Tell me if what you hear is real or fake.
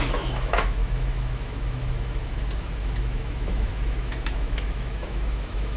fake